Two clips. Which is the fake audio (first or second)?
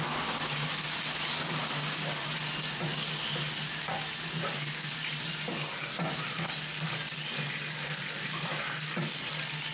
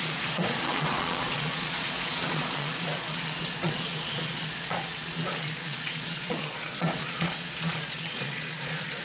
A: second